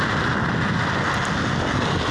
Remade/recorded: recorded